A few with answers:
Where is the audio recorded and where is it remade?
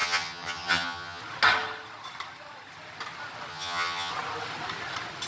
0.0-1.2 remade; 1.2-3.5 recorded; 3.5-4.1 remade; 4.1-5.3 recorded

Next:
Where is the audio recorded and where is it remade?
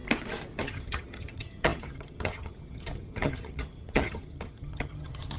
0.0-0.6 recorded; 0.6-5.4 remade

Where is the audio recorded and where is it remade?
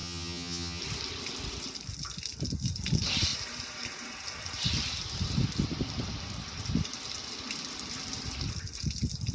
0.0-0.8 remade; 0.8-9.3 recorded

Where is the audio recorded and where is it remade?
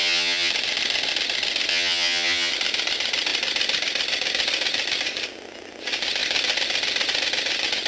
0.0-0.5 remade; 0.5-1.7 recorded; 1.7-2.5 remade; 2.5-7.9 recorded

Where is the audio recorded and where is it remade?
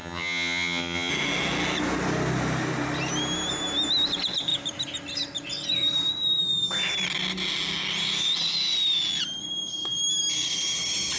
0.0-1.1 remade; 1.1-11.2 recorded